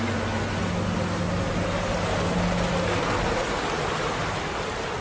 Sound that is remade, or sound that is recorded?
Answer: recorded